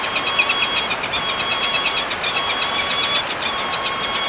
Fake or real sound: real